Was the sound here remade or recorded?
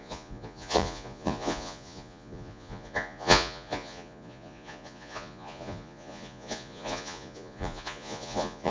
remade